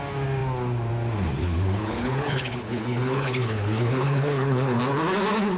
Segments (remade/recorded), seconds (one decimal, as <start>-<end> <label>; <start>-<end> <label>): 0.0-1.4 recorded; 1.4-4.8 remade; 4.8-5.6 recorded